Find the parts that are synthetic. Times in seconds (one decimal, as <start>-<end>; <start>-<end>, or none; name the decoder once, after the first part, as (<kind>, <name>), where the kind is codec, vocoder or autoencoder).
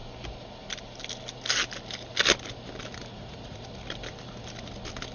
3.1-3.6 (vocoder, Vocos)